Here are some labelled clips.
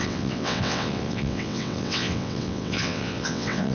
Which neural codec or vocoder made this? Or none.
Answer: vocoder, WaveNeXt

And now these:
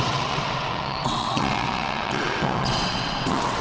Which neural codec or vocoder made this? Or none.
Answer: vocoder, WaveNeXt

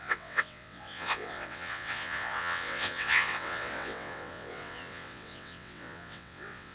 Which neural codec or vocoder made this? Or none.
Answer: vocoder, WaveNeXt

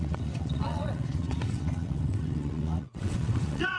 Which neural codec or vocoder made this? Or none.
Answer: vocoder, WaveNeXt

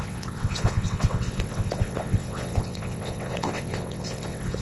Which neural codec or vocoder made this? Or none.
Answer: vocoder, WaveNeXt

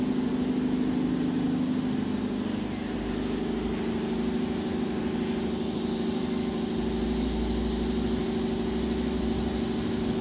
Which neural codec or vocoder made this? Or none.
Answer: none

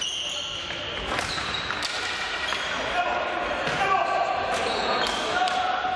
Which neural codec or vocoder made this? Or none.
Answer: none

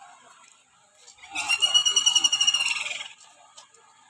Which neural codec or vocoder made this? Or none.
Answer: none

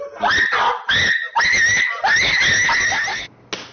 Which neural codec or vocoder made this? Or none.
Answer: none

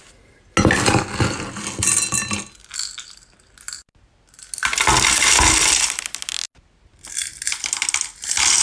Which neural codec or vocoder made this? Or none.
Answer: none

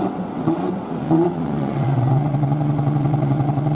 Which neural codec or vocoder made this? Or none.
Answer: vocoder, WaveNeXt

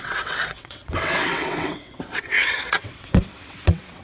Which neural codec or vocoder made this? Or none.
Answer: vocoder, WaveNeXt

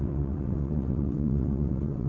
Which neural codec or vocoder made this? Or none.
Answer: vocoder, WaveNeXt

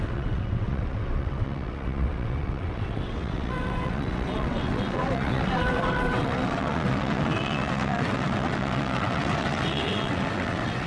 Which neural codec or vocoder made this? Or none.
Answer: vocoder, WaveNeXt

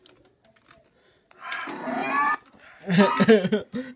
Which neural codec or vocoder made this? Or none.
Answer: none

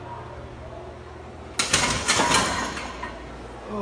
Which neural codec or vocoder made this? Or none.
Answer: none